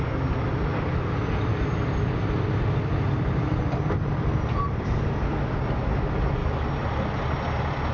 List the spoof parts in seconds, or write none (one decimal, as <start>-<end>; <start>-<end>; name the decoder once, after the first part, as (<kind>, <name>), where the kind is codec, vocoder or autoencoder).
none